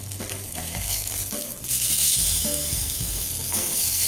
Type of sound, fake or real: fake